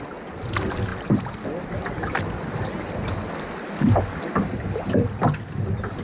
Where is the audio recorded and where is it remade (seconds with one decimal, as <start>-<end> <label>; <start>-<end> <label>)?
0.0-6.0 recorded